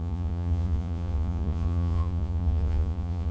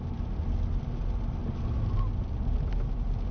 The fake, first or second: first